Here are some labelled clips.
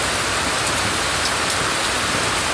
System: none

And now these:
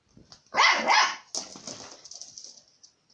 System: none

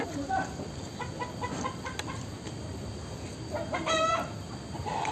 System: none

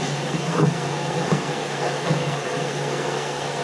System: codec, SNAC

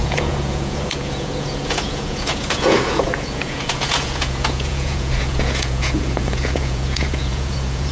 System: vocoder, Vocos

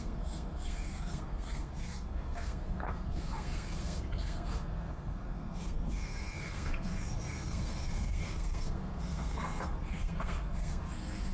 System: codec, SNAC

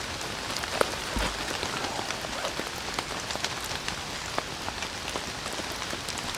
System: none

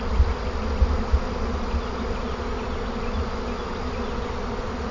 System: none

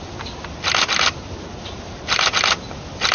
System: none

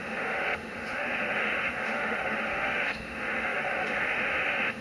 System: autoencoder, DAC-VAE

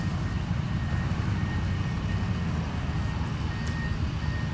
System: none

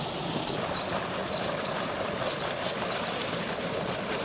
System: none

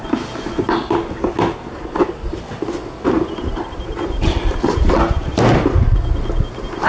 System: none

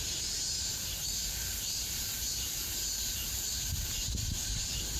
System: vocoder, BigVGAN v2